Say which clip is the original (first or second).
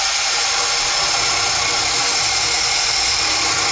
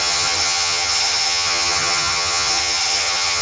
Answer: first